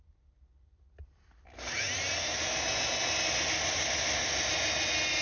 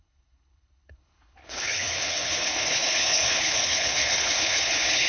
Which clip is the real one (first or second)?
first